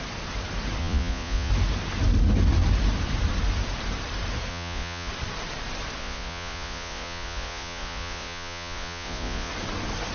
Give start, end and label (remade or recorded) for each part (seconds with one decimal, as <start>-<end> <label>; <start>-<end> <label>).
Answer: 0.0-0.8 recorded; 0.8-1.5 remade; 1.5-4.5 recorded; 4.5-5.1 remade; 5.1-6.0 recorded; 6.0-9.5 remade; 9.5-10.1 recorded